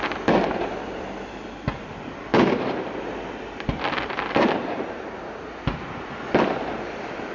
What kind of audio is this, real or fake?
real